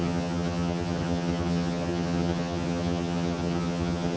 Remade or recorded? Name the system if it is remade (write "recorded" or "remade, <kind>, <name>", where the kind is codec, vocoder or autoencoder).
remade, vocoder, HiFi-GAN